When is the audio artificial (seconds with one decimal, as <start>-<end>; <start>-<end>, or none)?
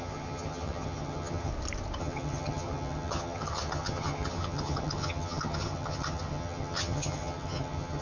0.0-1.5; 2.0-8.0